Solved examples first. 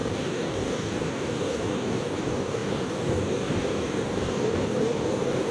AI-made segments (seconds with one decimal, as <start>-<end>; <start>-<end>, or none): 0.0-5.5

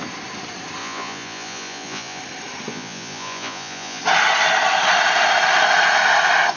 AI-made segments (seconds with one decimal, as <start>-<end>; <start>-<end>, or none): 0.8-2.2; 2.7-4.0

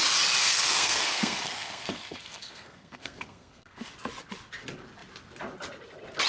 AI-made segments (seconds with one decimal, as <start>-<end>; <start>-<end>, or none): 0.4-3.9

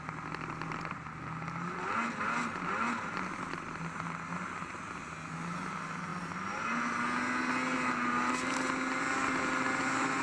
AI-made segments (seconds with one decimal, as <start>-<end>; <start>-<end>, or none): none

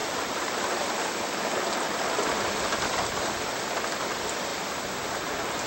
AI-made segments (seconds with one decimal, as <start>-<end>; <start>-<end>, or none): none

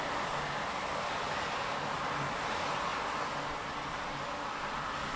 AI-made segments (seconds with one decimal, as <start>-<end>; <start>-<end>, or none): none

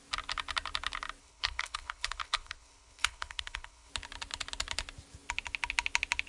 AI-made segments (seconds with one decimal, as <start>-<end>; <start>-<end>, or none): 1.2-3.9

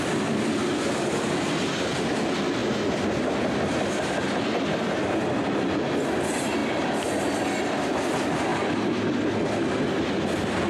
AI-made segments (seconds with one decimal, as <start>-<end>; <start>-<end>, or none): none